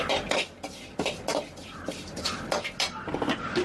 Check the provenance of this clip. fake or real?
real